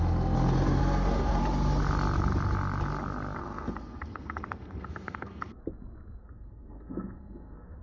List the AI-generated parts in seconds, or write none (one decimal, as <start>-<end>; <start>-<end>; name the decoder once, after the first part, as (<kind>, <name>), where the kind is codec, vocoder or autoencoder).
0.8-1.4 (codec, SNAC); 3.4-5.6; 6.2-7.8